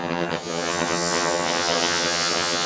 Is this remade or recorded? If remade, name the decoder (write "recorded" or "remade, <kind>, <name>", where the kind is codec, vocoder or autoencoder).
remade, vocoder, HiFi-GAN